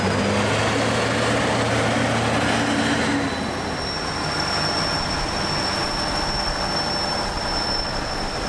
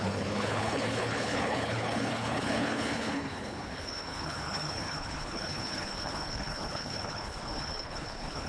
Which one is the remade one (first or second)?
second